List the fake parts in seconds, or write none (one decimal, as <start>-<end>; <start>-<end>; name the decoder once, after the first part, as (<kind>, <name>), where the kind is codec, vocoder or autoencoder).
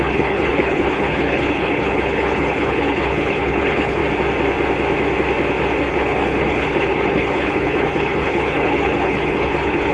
0.0-4.0 (codec, HILCodec); 5.9-9.9